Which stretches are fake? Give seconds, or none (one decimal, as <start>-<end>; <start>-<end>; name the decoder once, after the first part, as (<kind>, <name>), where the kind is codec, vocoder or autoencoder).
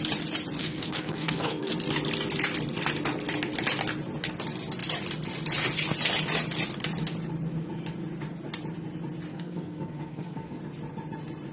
0.6-1.7 (codec, SNAC); 9.3-10.6